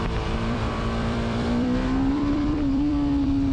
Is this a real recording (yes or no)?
no